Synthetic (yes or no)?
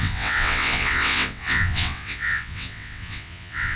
yes